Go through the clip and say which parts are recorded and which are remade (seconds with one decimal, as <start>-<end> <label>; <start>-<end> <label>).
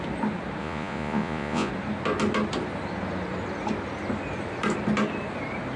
0.0-0.6 recorded; 0.6-1.7 remade; 1.7-5.8 recorded